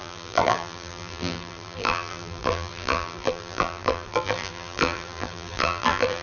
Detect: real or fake fake